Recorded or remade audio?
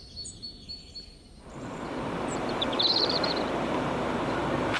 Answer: remade